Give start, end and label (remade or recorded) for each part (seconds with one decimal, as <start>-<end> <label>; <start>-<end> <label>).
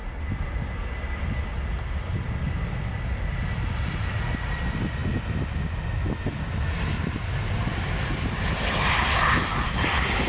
0.0-10.3 recorded